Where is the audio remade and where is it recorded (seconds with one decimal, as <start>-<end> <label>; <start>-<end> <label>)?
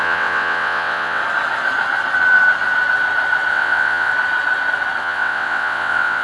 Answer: 0.0-1.2 remade; 1.2-3.5 recorded; 3.5-4.1 remade; 4.1-5.0 recorded; 5.0-6.2 remade